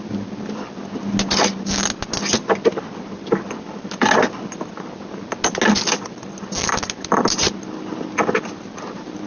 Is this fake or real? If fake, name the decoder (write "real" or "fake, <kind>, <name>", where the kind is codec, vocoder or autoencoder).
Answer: real